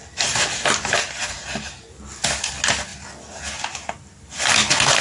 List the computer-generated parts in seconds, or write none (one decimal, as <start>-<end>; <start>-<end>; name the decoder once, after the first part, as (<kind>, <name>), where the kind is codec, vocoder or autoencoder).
none